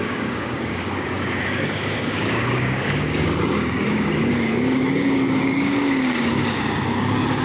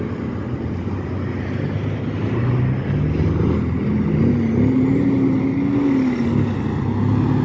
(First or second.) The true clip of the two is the second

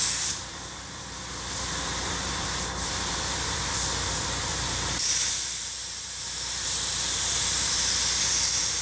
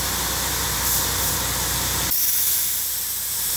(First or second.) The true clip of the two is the second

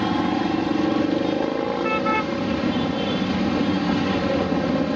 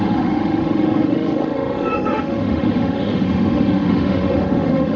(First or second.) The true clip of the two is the first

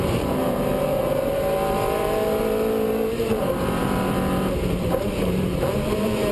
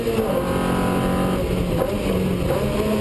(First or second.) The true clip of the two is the second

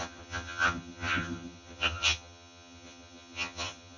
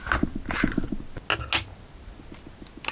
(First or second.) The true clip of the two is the second